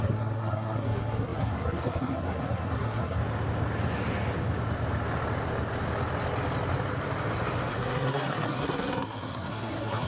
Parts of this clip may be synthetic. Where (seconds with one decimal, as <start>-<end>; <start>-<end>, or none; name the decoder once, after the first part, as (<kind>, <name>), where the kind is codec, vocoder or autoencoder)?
0.0-3.2 (codec, SNAC); 7.7-10.1